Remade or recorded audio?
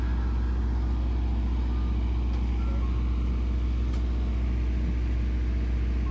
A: recorded